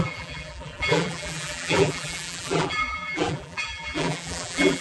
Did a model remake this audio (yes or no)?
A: yes